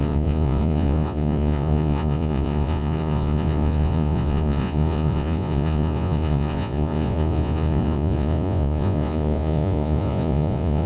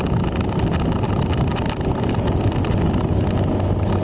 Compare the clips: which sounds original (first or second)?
second